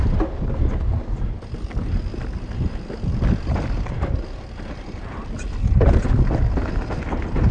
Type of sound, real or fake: real